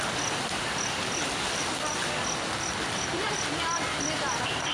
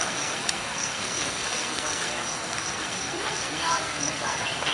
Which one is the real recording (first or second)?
first